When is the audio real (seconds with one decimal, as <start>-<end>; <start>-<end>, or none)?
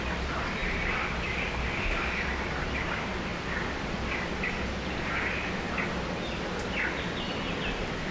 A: 0.0-8.1